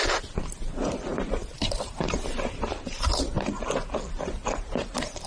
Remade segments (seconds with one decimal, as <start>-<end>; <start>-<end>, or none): 1.1-3.5; 4.4-5.3